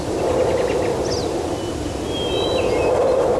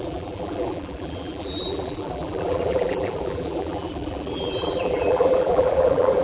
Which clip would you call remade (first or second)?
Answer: second